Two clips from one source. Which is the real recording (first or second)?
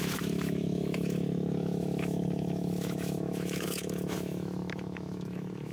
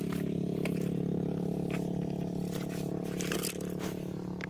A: second